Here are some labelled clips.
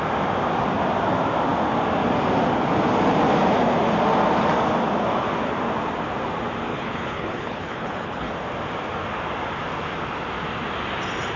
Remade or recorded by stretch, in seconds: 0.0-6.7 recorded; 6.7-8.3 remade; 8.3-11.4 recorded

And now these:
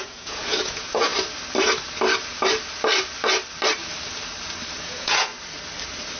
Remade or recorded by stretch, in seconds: 0.0-1.1 remade; 1.1-4.8 recorded; 4.8-5.3 remade; 5.3-6.2 recorded

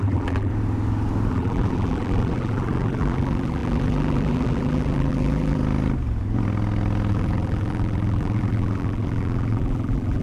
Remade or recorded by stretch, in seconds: 0.0-0.5 remade; 0.5-1.3 recorded; 1.3-5.6 remade; 5.6-7.1 recorded; 7.1-10.2 remade